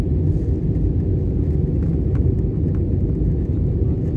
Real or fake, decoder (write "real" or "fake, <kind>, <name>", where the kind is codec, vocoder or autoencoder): real